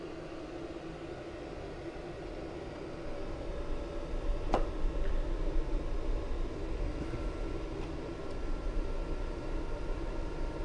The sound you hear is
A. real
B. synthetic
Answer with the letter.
A